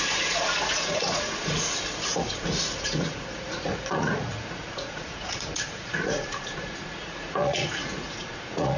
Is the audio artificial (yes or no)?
yes